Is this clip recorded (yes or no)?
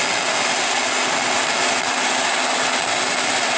yes